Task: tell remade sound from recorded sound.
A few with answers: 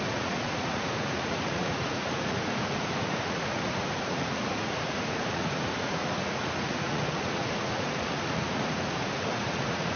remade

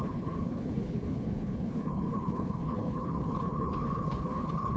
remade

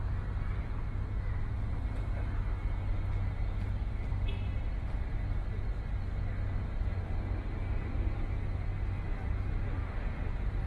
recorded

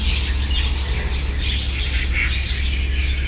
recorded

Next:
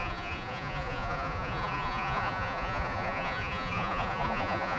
remade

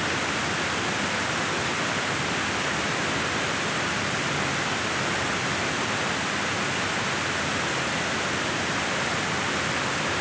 recorded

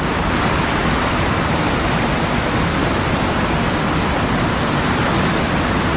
recorded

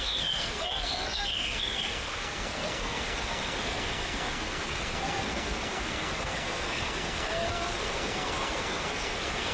remade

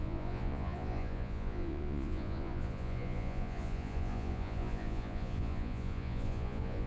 remade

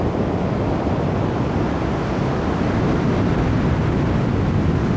recorded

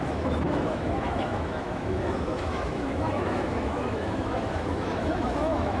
remade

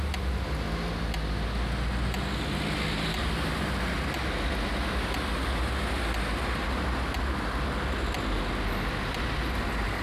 recorded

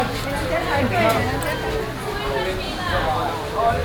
recorded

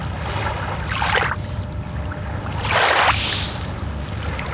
recorded